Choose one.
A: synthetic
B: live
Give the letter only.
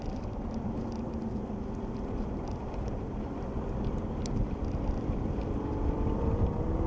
A